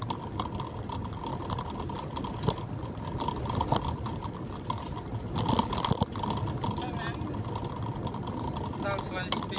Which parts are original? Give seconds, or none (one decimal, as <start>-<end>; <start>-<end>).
0.0-9.6